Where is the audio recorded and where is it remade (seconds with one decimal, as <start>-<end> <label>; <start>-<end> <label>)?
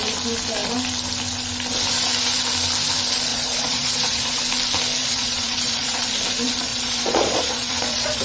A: 0.0-3.3 recorded; 3.3-4.4 remade; 4.4-5.0 recorded; 5.0-6.0 remade; 6.0-6.7 recorded; 6.7-8.2 remade